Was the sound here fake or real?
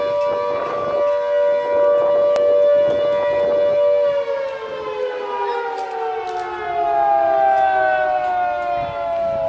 real